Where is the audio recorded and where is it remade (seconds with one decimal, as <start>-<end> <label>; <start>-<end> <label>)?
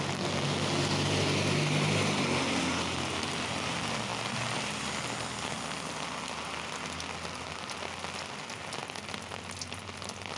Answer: 0.0-10.4 recorded